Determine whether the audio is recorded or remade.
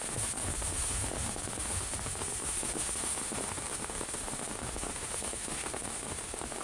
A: remade